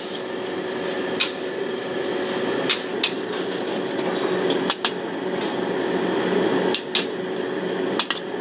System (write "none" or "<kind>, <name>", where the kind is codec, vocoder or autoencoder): none